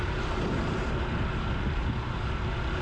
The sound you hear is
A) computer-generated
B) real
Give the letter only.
B